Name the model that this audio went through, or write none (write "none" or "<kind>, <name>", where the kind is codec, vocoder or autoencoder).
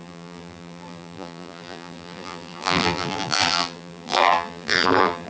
vocoder, BigVGAN v2